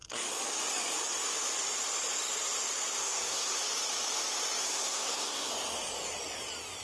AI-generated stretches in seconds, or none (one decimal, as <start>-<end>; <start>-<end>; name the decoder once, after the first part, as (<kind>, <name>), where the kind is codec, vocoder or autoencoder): 3.0-3.6 (codec, SNAC); 4.6-5.5